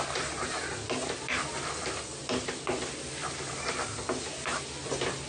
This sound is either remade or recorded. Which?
recorded